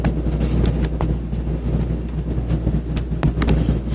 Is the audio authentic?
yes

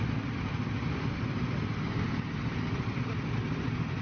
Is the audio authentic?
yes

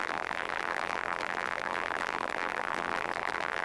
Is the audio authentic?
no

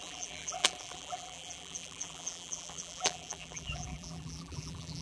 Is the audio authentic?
no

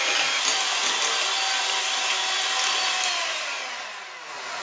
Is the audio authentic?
yes